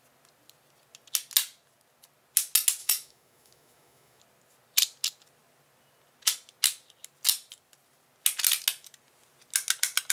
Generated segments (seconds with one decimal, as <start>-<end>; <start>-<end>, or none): 2.8-4.2